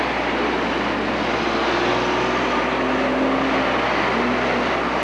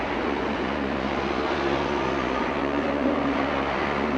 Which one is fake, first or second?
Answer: second